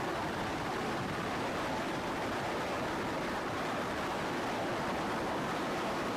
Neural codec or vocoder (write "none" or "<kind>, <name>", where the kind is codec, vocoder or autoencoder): vocoder, BigVGAN v2